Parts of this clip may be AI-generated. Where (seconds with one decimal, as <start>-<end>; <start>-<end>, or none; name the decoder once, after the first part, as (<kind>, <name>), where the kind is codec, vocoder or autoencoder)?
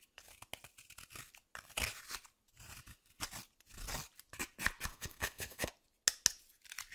4.9-5.7 (codec, SNAC)